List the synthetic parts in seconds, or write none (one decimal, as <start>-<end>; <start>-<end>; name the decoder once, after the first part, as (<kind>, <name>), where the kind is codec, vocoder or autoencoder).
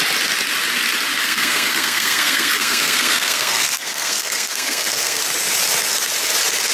1.2-5.2 (codec, SNAC)